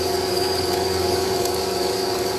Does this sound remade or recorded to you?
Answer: remade